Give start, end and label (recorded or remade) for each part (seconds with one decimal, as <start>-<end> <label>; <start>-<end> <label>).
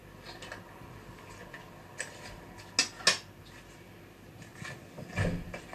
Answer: 0.0-5.7 recorded